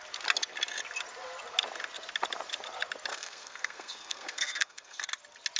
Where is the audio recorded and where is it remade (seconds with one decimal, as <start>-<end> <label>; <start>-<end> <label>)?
0.0-3.1 recorded; 3.1-5.0 remade; 5.0-5.6 recorded